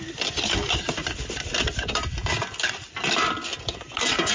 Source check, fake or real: real